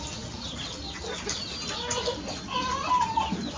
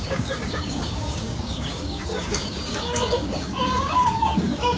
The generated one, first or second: second